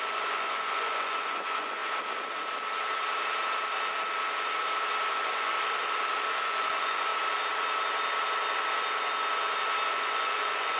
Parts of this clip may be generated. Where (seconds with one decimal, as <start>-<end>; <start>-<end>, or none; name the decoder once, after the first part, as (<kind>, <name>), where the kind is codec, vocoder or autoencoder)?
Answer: 0.0-1.8 (vocoder, Vocos); 5.1-5.5; 6.3-7.1; 9.9-10.8